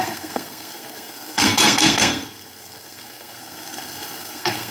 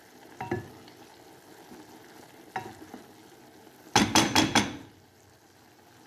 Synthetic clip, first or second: first